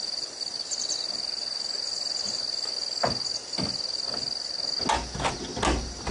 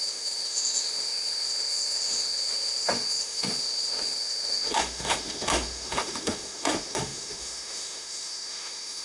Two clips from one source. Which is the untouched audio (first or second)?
first